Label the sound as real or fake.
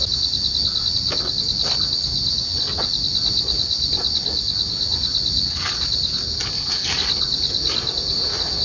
real